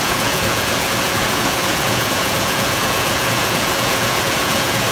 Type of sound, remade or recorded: remade